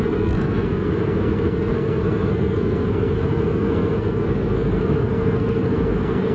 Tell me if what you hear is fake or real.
fake